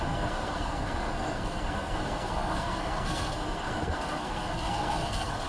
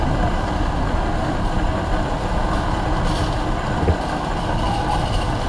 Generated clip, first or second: first